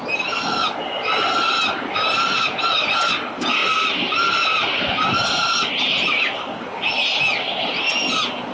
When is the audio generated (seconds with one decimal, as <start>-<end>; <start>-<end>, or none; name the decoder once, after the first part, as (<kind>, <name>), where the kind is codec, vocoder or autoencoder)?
none